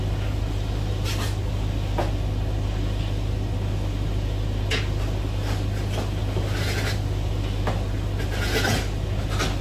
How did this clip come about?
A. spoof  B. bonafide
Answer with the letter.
B